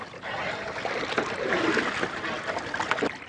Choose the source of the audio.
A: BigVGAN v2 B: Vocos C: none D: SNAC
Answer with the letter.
C